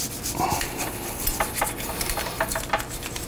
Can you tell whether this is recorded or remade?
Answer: recorded